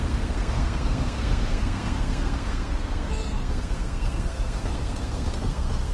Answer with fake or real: fake